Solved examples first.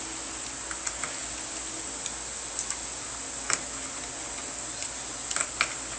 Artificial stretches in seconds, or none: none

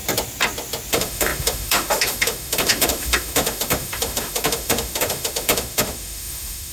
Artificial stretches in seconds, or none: 0.9-6.7 (autoencoder, DAC-VAE)

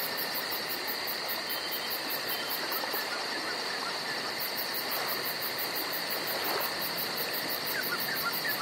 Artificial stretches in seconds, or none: 4.0-8.6 (vocoder, BigVGAN v2)

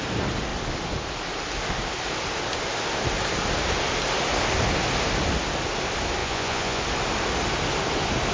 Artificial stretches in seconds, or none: 6.2-6.8 (vocoder, Vocos)

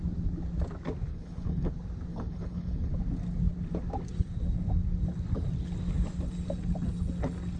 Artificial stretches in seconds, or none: 1.1-1.7 (codec, HILCodec); 2.1-2.9

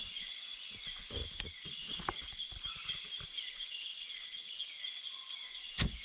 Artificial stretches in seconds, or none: 0.0-1.2 (vocoder, Vocos); 3.4-6.0

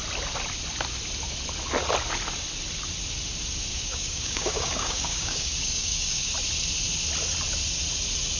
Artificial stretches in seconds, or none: 3.7-6.3 (codec, DAC)